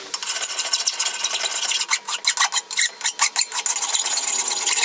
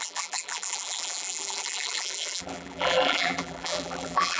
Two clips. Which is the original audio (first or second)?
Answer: first